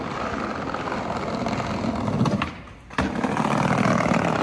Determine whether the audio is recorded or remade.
recorded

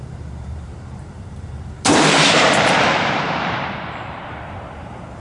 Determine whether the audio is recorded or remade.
remade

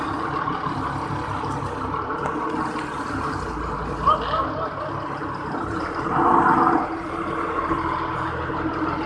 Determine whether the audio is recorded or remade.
recorded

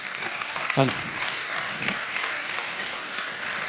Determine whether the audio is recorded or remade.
remade